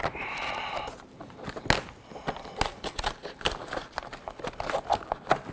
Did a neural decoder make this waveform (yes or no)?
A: no